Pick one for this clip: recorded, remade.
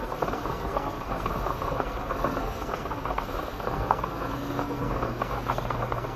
remade